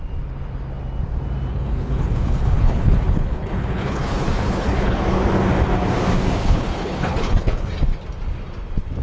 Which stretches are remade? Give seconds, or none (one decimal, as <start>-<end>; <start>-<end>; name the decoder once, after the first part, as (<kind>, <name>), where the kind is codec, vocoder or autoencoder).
1.5-5.0 (codec, HILCodec); 6.4-7.7